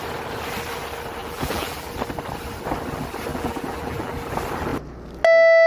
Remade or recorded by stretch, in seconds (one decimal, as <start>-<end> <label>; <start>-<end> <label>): 0.0-1.2 recorded; 1.2-1.9 remade; 1.9-3.3 recorded; 3.3-4.1 remade; 4.1-5.7 recorded